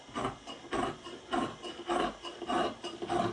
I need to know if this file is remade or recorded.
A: recorded